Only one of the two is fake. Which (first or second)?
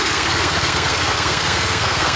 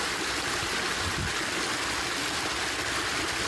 first